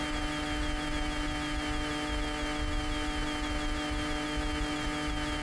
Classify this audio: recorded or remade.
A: recorded